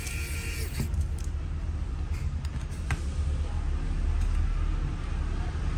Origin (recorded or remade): recorded